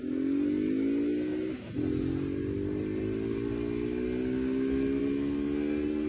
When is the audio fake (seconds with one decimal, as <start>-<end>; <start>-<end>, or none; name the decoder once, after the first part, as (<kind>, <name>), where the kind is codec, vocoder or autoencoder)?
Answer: none